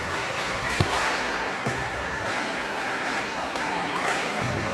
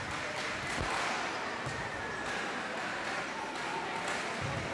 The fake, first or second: first